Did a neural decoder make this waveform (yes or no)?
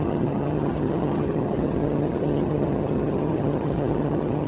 yes